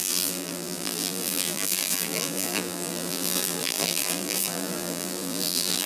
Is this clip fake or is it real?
fake